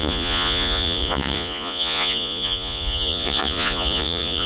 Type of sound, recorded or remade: remade